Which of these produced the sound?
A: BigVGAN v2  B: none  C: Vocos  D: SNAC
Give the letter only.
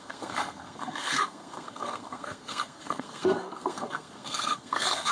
D